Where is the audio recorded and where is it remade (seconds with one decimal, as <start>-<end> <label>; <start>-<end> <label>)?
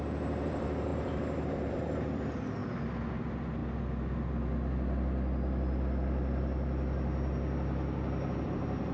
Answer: 0.0-2.6 remade; 2.6-3.1 recorded; 3.1-3.6 remade; 3.6-8.4 recorded; 8.4-8.9 remade